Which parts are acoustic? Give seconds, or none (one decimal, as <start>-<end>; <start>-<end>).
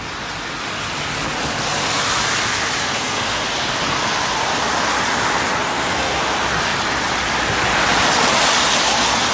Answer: 0.0-2.8; 3.4-5.7; 6.2-9.3